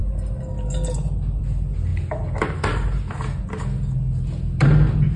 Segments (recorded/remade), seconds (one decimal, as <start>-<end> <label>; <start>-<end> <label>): 0.0-5.2 recorded

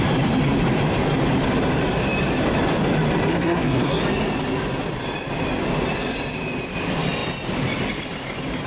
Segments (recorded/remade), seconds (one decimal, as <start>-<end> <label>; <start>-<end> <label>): 0.0-3.3 recorded; 3.3-4.0 remade; 4.0-8.7 recorded